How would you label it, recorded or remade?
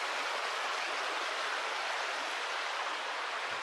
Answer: recorded